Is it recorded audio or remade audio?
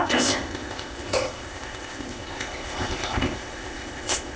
remade